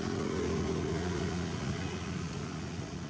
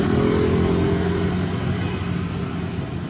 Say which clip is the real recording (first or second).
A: second